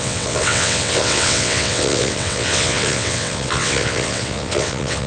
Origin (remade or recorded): remade